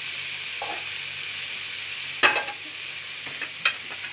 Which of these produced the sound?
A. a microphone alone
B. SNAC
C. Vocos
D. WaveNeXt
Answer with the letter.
A